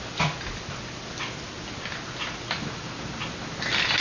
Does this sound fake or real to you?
real